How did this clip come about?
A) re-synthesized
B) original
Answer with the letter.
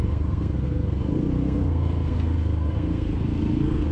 A